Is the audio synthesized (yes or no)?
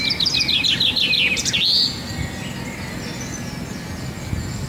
no